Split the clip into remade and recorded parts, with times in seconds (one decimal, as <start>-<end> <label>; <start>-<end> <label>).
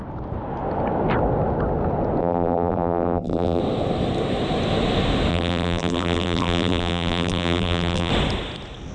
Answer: 0.0-2.2 recorded; 2.2-3.6 remade; 3.6-5.3 recorded; 5.3-8.1 remade; 8.1-8.9 recorded